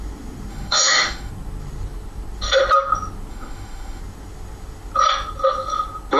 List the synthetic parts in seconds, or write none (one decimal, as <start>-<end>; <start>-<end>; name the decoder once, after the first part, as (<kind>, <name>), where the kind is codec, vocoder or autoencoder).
0.5-1.3 (autoencoder, DAC-VAE); 3.3-4.0